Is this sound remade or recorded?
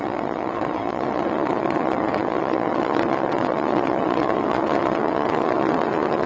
remade